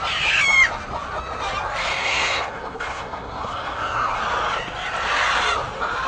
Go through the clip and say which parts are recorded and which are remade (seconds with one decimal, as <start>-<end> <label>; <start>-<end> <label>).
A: 0.0-2.0 recorded; 2.0-4.2 remade; 4.2-6.1 recorded